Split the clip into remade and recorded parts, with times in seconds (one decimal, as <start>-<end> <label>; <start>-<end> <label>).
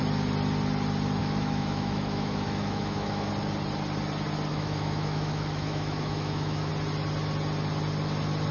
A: 0.0-1.2 recorded; 1.2-3.3 remade; 3.3-4.5 recorded; 4.5-6.7 remade; 6.7-8.5 recorded